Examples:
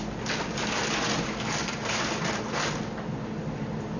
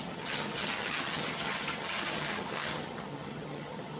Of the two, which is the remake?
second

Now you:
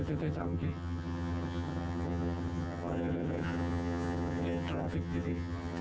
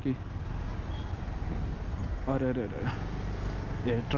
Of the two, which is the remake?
first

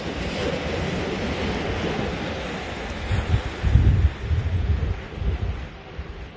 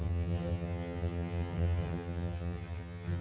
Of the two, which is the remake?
second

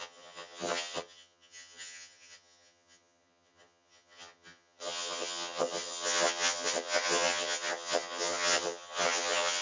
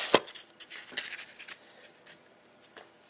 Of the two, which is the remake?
first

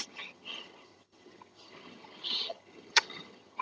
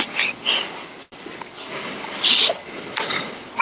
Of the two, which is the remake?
first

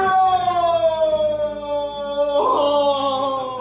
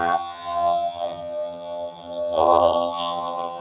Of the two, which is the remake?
second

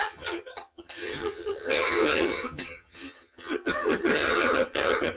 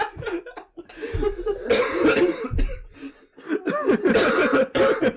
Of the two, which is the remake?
first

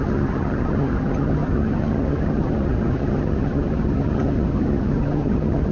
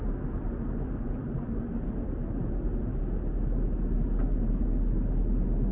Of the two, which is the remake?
first